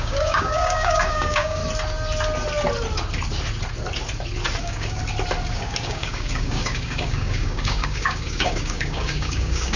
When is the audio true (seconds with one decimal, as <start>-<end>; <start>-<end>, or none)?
1.6-4.6; 5.0-5.5